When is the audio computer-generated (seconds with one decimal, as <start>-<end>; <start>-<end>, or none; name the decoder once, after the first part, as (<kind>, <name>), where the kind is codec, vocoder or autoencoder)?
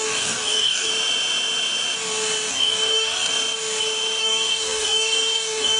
0.0-0.9 (codec, DAC); 2.5-3.3; 4.2-5.8